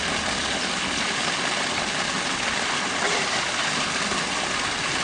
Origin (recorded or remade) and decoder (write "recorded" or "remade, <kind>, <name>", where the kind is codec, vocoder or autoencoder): recorded